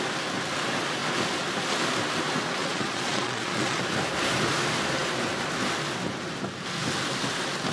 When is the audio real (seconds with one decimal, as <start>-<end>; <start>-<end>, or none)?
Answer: 0.0-2.6; 3.8-7.7